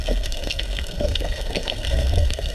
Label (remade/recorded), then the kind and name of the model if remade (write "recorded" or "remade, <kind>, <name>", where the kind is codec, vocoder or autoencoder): remade, codec, SNAC